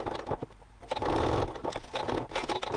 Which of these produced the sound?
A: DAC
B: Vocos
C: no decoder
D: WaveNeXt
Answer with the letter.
C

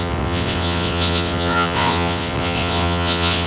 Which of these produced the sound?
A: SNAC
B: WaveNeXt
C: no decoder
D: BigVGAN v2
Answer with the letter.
B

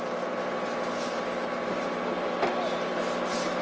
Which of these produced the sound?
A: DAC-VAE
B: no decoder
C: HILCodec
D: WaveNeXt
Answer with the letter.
B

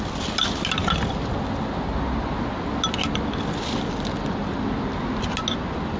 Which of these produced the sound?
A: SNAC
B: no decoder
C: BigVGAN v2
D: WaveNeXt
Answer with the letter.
B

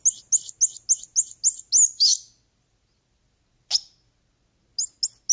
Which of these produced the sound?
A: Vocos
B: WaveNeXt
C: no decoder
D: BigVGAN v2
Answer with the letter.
C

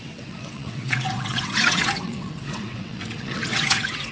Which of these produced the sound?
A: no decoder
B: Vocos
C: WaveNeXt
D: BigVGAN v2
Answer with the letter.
C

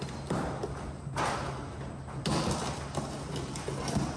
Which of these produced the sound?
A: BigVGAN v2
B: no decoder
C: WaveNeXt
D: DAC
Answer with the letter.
B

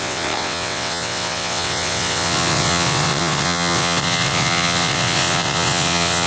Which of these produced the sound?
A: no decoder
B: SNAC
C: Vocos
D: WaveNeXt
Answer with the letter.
D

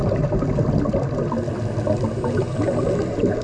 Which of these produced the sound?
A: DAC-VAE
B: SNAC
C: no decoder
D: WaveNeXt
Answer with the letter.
C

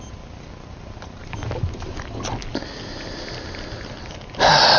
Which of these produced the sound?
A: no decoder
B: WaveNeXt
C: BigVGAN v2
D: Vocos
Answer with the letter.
A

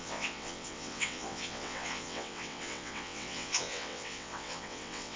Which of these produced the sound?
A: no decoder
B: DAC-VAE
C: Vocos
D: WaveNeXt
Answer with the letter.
D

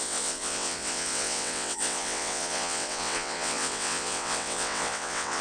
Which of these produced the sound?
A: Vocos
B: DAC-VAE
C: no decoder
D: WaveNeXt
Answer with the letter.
D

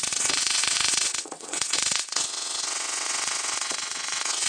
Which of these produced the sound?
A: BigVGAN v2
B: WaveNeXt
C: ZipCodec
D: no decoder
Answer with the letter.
B